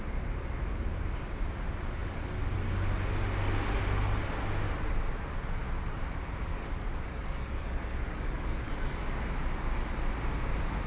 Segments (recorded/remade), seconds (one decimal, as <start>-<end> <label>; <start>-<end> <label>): 0.0-6.5 recorded; 6.5-8.7 remade; 8.7-10.9 recorded